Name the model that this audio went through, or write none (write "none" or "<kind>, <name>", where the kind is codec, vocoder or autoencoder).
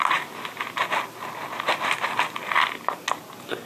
none